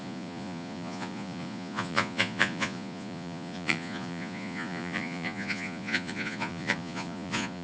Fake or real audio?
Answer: fake